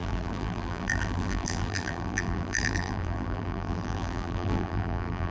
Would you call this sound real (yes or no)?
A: no